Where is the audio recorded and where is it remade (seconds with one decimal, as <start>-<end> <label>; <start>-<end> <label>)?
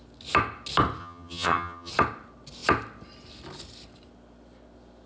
0.0-1.0 recorded; 1.0-1.9 remade; 1.9-5.1 recorded